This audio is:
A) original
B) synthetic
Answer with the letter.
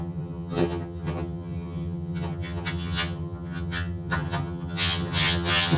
B